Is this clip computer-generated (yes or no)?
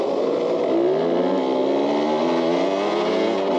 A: no